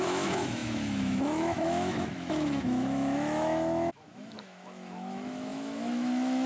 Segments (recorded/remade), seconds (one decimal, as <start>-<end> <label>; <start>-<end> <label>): 0.0-6.5 remade

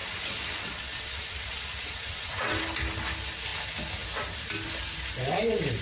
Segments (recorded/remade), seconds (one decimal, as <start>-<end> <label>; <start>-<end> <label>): 0.0-2.6 remade; 2.6-5.8 recorded

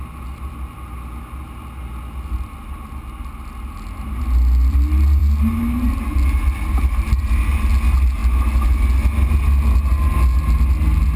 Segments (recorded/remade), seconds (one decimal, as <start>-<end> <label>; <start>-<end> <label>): 0.0-11.2 recorded

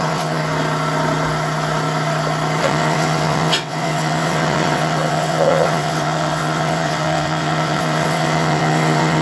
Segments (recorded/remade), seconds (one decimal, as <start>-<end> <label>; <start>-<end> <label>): 0.0-0.4 remade; 0.4-2.6 recorded; 2.6-9.2 remade

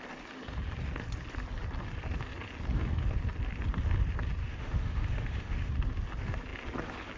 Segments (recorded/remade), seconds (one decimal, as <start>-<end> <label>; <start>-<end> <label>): 0.0-4.4 recorded; 4.4-5.7 remade; 5.7-7.2 recorded

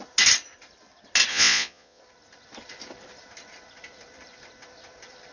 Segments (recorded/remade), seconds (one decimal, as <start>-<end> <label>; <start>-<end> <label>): 0.0-1.3 recorded; 1.3-2.0 remade; 2.0-5.3 recorded

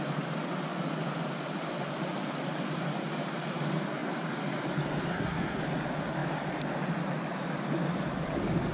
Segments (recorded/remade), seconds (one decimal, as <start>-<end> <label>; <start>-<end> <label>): 0.0-5.1 recorded; 5.1-5.6 remade; 5.6-8.7 recorded

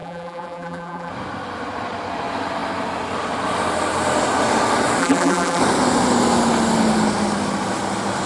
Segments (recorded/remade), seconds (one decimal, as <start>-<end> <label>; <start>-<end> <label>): 0.0-1.1 remade; 1.1-5.0 recorded; 5.0-5.6 remade; 5.6-8.3 recorded